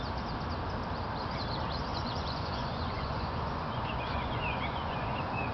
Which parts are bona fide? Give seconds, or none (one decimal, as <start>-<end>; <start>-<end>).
0.0-1.9